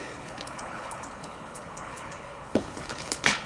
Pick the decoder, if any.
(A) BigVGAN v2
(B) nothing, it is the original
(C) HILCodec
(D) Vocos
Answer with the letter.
C